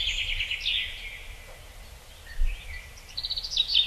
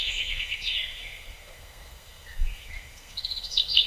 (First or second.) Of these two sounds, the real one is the first